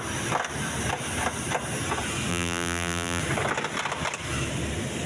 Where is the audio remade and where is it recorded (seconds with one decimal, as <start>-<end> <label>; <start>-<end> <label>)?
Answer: 0.0-2.3 recorded; 2.3-3.2 remade; 3.2-5.1 recorded